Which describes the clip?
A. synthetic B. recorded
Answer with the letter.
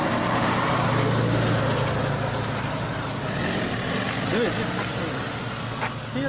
B